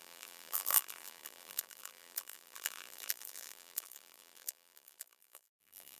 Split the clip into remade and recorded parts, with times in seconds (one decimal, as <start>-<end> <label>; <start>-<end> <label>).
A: 0.0-6.0 remade